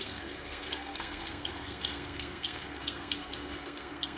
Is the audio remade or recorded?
remade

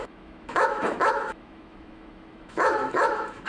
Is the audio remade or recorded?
remade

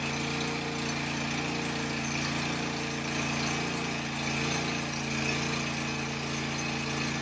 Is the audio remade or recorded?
recorded